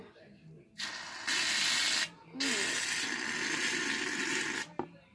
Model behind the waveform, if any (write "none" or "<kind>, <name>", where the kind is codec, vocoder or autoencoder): none